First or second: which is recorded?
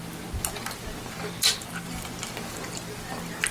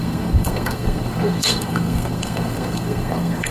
first